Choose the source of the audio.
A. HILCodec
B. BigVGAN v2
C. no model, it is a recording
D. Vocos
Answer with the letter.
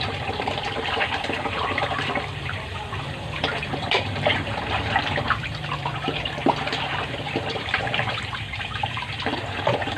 B